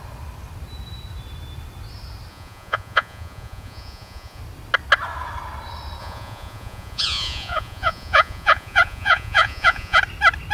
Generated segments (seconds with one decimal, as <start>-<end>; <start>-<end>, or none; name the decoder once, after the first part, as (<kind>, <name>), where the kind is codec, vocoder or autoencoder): 2.3-4.4 (vocoder, Vocos); 6.0-10.0